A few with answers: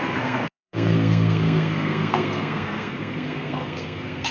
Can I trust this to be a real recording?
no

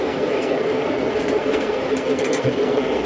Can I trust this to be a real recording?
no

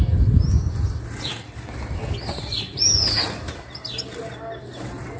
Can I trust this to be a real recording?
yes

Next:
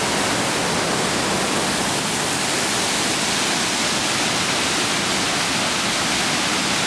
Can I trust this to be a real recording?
yes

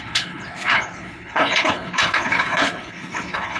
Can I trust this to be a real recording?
no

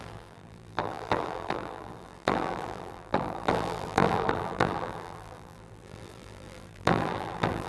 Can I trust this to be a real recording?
no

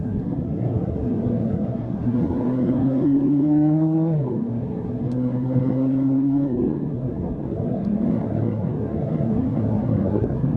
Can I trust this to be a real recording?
no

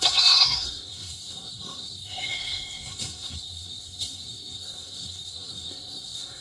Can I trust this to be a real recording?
no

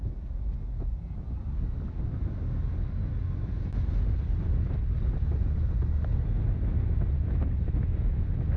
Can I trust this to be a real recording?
yes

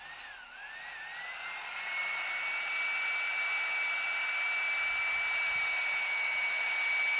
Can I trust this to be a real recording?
yes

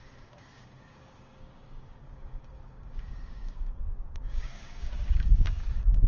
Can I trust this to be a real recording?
no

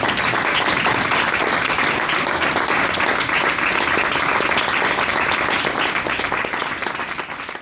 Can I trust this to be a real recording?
yes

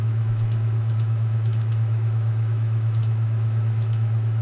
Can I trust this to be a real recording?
no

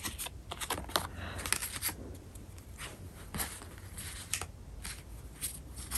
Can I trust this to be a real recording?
yes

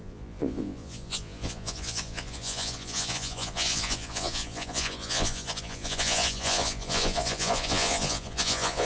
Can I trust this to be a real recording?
no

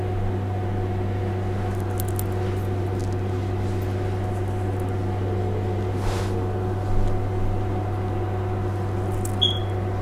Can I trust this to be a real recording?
yes